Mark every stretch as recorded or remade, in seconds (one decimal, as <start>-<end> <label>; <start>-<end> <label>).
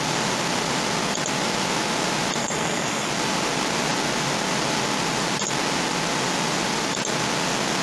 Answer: 0.0-2.4 recorded; 2.4-3.1 remade; 3.1-7.8 recorded